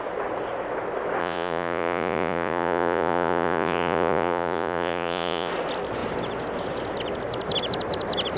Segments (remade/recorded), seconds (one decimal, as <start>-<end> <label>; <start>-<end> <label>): 0.0-1.2 recorded; 1.2-5.5 remade; 5.5-8.4 recorded